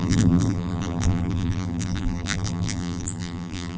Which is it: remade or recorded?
remade